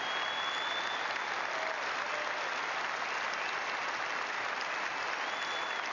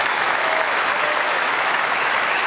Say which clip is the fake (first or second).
second